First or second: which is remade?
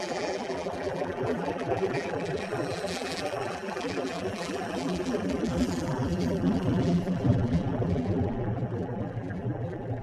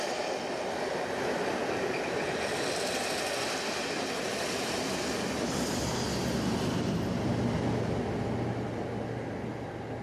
first